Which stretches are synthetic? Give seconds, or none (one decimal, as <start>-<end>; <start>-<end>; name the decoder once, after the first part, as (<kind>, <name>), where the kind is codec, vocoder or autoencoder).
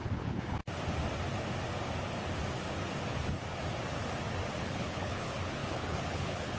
0.0-0.6 (codec, HILCodec); 4.6-6.6